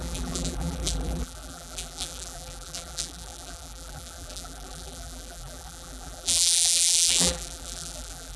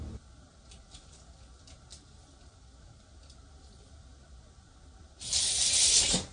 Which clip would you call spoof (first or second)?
first